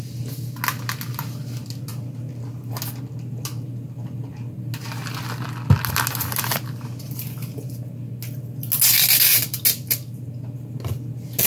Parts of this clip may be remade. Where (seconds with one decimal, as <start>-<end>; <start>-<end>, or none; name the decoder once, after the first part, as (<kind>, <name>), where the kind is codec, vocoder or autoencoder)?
none